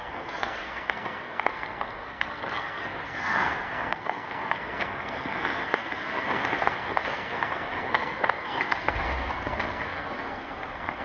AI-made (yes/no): yes